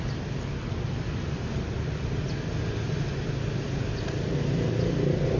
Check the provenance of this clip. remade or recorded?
recorded